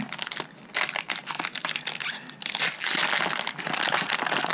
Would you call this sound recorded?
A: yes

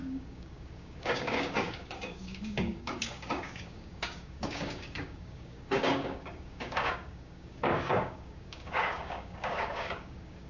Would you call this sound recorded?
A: no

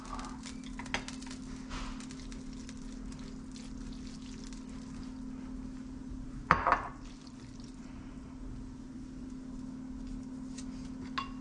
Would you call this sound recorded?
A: yes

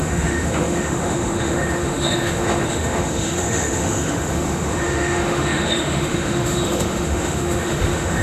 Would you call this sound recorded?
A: no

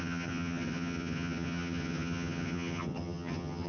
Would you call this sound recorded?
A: no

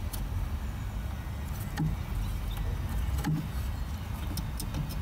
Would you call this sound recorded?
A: yes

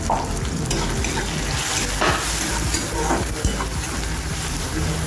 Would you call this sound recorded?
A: yes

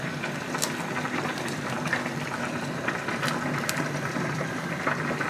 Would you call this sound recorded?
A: no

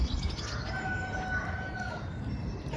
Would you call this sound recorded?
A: yes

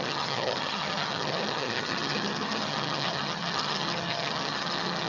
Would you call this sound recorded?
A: no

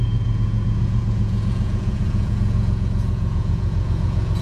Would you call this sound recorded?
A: no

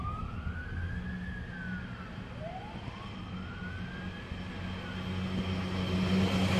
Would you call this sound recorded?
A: yes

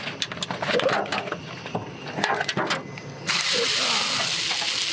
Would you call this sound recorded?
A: yes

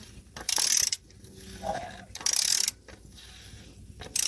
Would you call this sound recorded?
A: yes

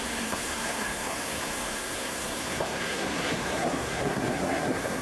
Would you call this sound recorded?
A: no